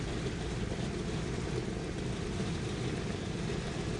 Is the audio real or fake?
real